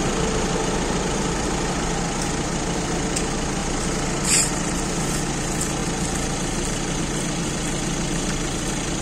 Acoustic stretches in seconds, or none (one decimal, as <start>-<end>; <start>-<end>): 0.0-3.6; 5.2-9.0